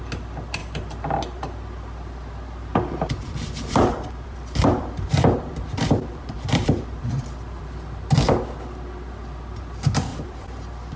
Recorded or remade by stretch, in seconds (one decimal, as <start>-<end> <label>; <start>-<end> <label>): 0.0-2.7 recorded; 2.7-7.6 remade; 7.6-10.1 recorded; 10.1-11.0 remade